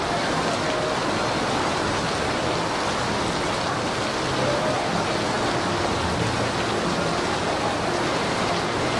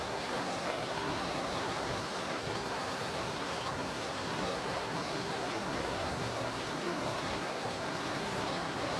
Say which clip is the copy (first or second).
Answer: second